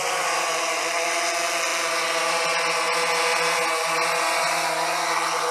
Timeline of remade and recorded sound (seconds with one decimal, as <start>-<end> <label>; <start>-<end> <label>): 0.0-5.5 recorded